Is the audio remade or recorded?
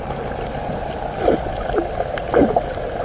recorded